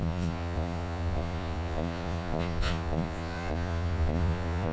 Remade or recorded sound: remade